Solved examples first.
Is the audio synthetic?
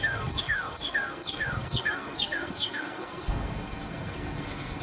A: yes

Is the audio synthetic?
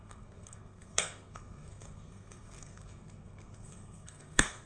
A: yes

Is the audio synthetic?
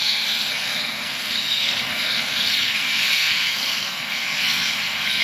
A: yes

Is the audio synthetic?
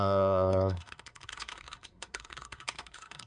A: yes